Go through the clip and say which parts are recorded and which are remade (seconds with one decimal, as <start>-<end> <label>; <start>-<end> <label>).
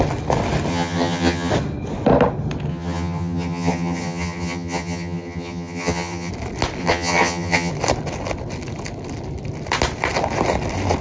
0.0-0.7 recorded; 0.7-1.5 remade; 1.5-2.7 recorded; 2.7-6.3 remade; 6.3-6.8 recorded; 6.8-7.7 remade; 7.7-11.0 recorded